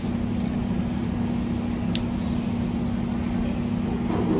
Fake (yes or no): no